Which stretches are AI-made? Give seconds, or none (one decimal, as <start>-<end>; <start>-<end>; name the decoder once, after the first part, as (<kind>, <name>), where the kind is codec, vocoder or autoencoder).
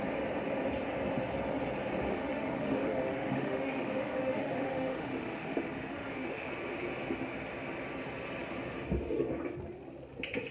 2.1-6.5 (autoencoder, DAC-VAE)